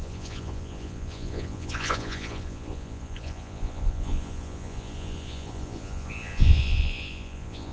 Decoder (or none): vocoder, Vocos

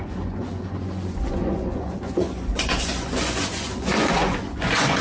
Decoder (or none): vocoder, Vocos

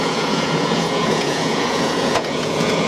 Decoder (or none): vocoder, Vocos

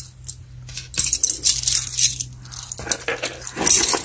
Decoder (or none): none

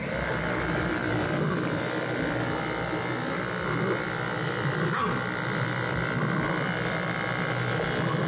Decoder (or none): none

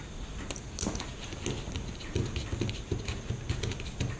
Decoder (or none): none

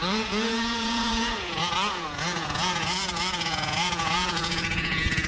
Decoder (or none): vocoder, Vocos